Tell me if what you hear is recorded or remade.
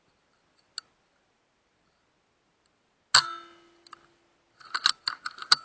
recorded